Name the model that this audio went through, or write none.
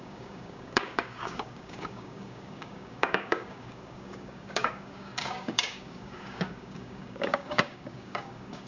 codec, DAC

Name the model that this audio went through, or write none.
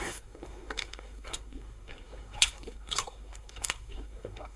codec, SNAC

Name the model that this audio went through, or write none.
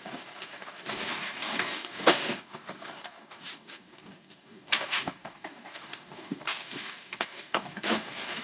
codec, DAC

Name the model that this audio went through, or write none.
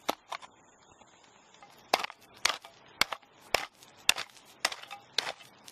none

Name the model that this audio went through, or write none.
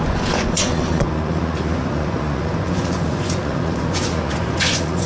vocoder, Vocos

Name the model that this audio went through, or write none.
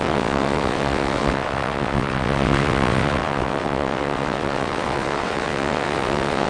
vocoder, WaveNeXt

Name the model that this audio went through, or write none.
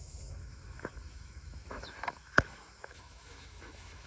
autoencoder, DAC-VAE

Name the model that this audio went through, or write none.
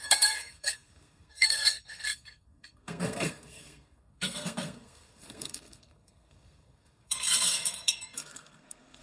codec, SNAC